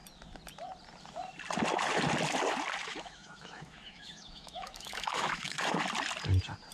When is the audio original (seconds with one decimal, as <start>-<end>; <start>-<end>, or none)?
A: 0.0-2.8; 5.8-6.7